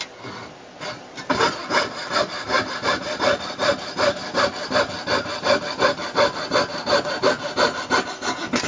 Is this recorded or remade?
recorded